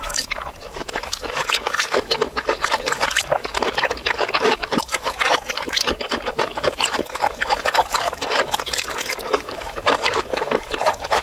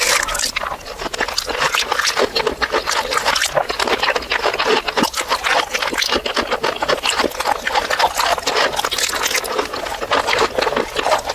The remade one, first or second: first